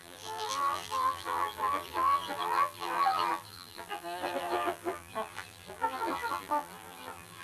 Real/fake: fake